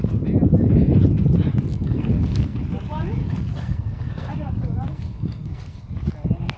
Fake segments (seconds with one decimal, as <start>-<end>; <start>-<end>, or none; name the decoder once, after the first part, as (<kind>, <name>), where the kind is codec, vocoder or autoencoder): 1.7-2.6 (codec, SNAC); 3.2-4.3; 4.9-5.8